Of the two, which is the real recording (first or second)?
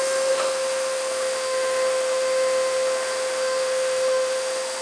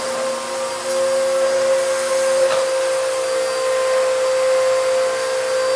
second